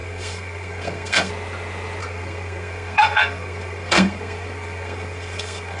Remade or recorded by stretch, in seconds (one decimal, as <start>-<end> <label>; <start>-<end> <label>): 0.0-1.3 remade; 1.3-2.0 recorded; 2.0-5.8 remade